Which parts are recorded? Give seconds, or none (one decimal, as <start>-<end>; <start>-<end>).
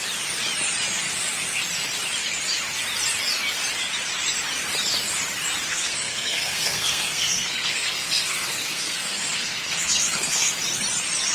0.0-5.7; 10.5-11.3